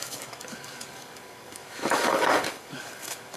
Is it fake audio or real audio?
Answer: fake